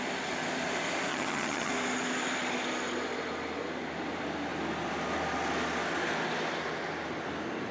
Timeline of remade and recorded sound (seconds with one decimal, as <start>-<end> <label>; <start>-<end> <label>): 0.0-1.1 recorded; 1.1-1.7 remade; 1.7-7.7 recorded